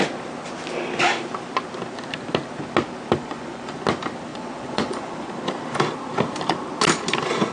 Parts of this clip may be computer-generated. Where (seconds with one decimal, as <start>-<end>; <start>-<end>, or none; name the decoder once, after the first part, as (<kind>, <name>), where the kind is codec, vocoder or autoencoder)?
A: 3.2-3.8 (vocoder, Vocos); 4.3-5.3

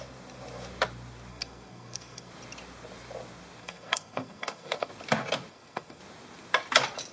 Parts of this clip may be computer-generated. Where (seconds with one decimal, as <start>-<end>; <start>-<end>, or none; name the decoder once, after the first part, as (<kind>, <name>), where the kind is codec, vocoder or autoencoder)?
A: 1.3-2.3 (codec, SNAC); 3.6-4.9; 5.5-6.0

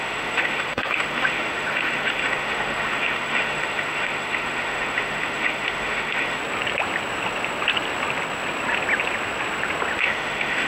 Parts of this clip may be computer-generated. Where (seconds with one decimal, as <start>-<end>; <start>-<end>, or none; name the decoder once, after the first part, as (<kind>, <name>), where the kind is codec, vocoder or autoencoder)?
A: 0.0-6.4 (autoencoder, DAC-VAE); 10.0-10.7

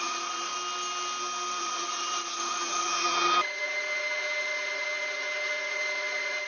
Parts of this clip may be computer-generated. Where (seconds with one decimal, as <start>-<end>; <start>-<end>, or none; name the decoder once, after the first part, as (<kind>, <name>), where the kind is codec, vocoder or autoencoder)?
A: 0.0-0.5 (vocoder, Vocos); 1.6-6.5

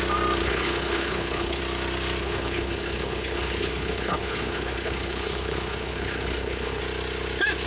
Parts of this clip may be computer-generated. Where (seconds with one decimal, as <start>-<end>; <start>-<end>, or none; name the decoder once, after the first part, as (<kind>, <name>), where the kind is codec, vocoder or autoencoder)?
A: 0.4-1.6 (codec, HILCodec); 2.2-6.8

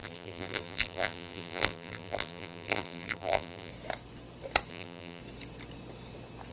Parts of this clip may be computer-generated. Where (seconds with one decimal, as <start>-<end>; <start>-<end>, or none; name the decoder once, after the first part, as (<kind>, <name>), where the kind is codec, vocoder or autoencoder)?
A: 0.0-3.7 (vocoder, BigVGAN v2); 4.7-5.2